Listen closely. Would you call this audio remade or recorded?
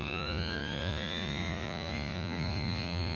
remade